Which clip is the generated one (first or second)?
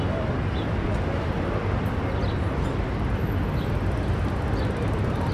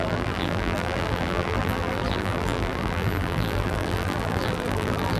second